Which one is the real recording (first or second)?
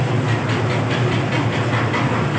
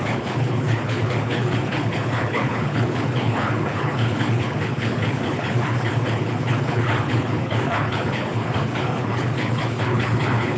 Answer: first